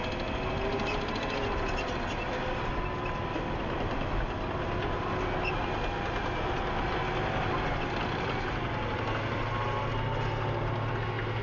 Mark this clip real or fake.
real